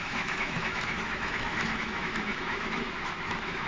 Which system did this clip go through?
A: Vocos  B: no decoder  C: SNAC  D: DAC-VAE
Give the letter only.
D